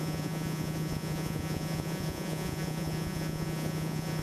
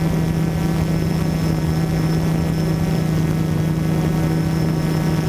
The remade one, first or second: first